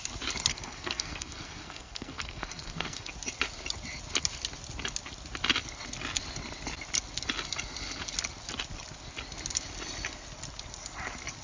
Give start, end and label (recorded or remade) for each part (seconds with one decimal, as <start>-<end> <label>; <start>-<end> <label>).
0.0-0.5 recorded; 0.5-3.1 remade; 3.1-11.4 recorded

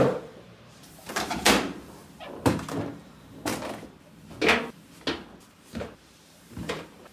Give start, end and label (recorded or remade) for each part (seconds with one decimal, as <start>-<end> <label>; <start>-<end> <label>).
0.0-3.5 remade; 3.5-5.5 recorded; 5.5-7.1 remade

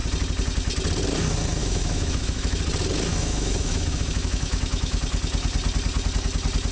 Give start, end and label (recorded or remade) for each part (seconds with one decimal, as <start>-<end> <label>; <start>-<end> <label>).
0.0-1.6 recorded; 1.6-2.6 remade; 2.6-3.1 recorded; 3.1-5.0 remade; 5.0-6.7 recorded

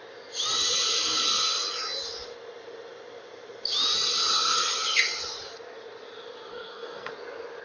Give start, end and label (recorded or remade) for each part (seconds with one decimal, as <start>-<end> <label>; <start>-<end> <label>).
0.0-6.5 recorded; 6.5-7.1 remade; 7.1-7.6 recorded

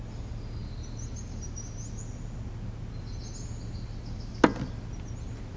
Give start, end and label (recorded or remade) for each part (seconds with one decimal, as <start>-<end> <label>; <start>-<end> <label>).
0.0-5.6 recorded

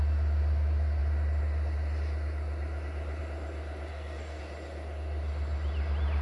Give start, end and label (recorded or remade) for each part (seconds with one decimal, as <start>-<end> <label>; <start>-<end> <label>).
0.0-3.9 recorded; 3.9-4.4 remade; 4.4-6.2 recorded

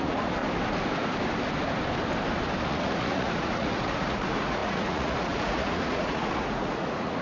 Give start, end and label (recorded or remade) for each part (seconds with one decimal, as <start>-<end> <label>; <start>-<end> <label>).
0.0-0.4 remade; 0.4-2.6 recorded; 2.6-7.2 remade